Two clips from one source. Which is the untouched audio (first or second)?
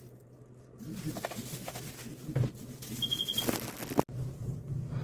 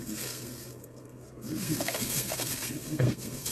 first